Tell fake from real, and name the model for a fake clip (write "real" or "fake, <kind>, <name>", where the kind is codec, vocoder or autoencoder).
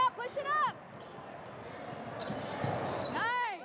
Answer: real